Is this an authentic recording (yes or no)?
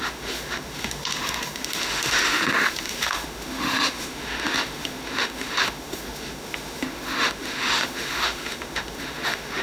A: no